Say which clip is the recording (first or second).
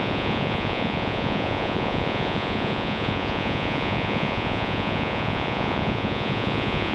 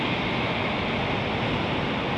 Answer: second